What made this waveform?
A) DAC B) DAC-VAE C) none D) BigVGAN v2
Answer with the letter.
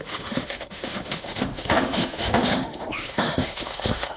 B